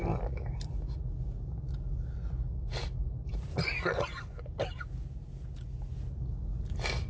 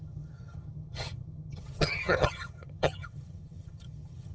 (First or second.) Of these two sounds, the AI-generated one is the second